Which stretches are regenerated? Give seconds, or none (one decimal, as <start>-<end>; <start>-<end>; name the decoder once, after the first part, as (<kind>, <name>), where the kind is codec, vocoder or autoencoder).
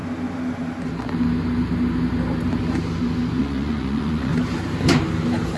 3.4-4.3 (vocoder, Vocos)